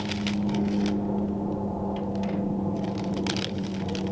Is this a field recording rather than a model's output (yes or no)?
yes